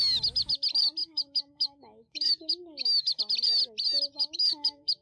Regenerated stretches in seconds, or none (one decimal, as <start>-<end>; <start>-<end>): 1.0-3.2; 4.2-5.0